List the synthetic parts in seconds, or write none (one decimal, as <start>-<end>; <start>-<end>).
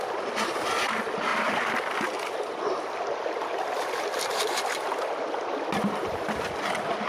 none